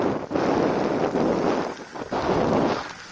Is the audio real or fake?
real